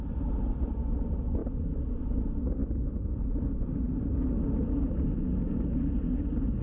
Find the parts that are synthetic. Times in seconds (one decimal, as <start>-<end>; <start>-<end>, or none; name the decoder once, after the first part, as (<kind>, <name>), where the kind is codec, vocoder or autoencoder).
none